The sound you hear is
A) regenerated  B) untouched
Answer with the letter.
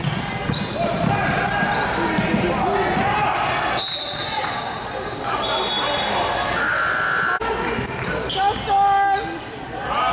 B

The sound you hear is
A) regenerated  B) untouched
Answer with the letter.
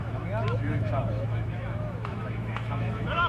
A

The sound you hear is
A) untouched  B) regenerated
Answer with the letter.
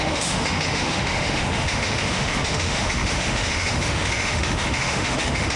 B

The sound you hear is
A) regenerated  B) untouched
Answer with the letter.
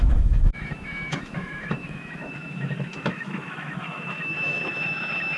A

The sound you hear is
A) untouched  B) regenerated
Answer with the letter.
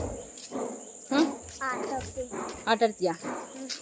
A